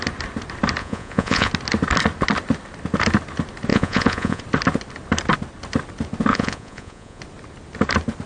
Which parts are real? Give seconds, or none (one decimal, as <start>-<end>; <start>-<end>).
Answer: 0.0-0.8; 1.5-3.7; 4.4-6.3; 7.2-8.3